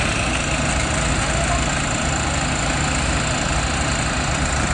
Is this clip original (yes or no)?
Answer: yes